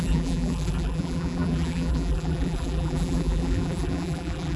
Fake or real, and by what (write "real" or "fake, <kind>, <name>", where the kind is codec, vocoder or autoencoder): fake, vocoder, BigVGAN v2